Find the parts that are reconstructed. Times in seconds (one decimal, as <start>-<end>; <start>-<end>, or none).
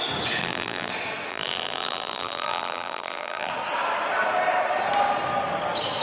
0.4-0.9; 1.3-3.5